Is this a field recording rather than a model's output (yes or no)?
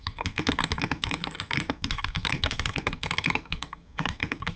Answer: no